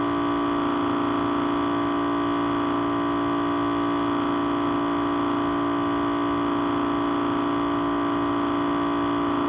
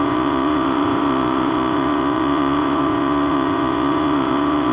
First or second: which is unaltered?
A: first